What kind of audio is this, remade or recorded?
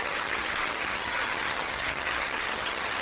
remade